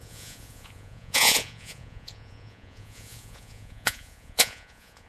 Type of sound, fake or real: fake